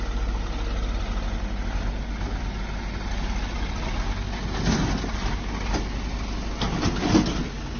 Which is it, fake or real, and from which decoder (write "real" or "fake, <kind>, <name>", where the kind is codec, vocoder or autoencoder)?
real